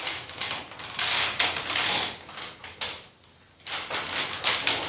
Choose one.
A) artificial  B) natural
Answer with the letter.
B